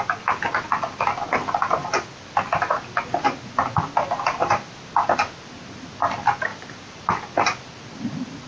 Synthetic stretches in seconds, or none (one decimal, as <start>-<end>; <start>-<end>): 6.5-7.1